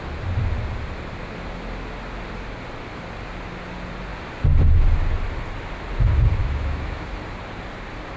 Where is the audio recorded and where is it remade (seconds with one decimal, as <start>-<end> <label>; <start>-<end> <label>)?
0.0-6.4 recorded; 6.4-7.1 remade; 7.1-8.2 recorded